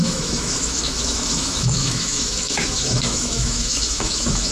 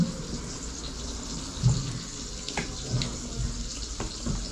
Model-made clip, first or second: first